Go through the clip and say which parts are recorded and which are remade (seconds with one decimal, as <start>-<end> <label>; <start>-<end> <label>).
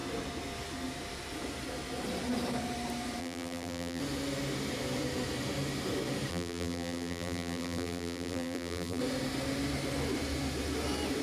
0.0-3.2 recorded; 3.2-4.0 remade; 4.0-6.3 recorded; 6.3-9.0 remade; 9.0-11.2 recorded